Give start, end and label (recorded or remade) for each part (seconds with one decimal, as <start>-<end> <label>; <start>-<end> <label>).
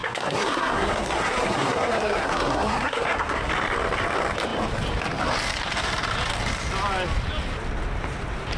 0.0-3.5 remade; 3.5-8.6 recorded